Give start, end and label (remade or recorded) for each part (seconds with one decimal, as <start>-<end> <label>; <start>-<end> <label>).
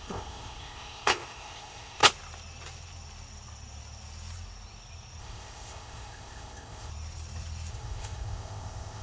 0.0-2.0 remade; 2.0-5.2 recorded; 5.2-6.9 remade; 6.9-7.7 recorded; 7.7-9.0 remade